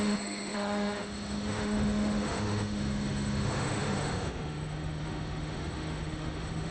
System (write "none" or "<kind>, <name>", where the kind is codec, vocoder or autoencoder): autoencoder, DAC-VAE